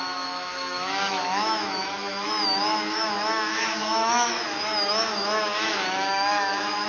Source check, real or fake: fake